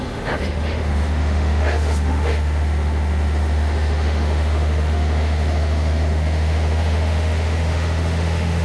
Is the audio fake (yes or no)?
yes